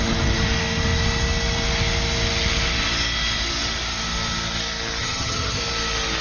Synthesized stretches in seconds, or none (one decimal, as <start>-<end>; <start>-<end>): 5.0-5.6